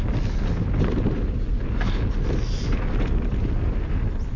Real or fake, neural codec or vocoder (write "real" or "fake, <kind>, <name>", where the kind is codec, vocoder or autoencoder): real